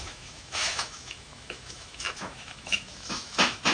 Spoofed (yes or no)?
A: yes